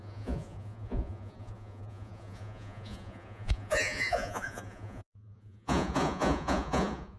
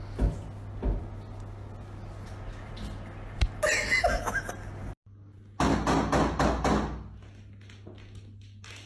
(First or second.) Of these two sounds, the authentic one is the second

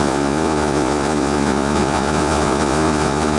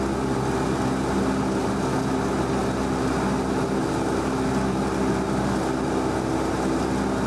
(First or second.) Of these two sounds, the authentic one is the second